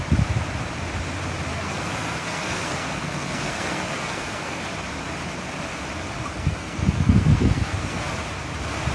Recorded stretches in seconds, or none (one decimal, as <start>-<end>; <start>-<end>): 0.0-1.5; 4.6-6.3; 8.1-8.9